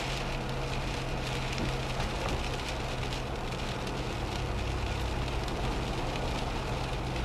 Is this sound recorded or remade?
recorded